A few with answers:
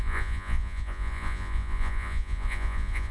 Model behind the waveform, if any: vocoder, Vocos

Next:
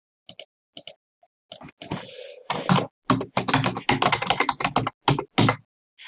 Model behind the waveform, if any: none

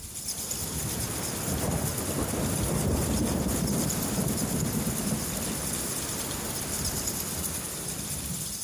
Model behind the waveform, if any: none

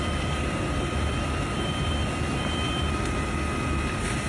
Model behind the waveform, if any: vocoder, BigVGAN v2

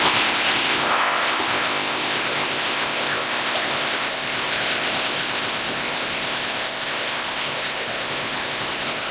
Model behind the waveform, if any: codec, ZipCodec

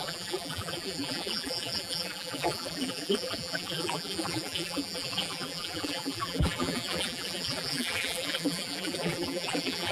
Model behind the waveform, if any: vocoder, BigVGAN v2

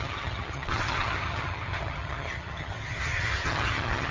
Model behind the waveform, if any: vocoder, HiFi-GAN